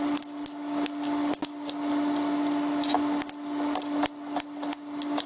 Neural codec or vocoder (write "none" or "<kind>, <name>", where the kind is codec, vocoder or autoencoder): none